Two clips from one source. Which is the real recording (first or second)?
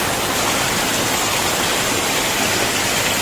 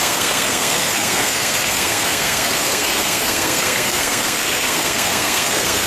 first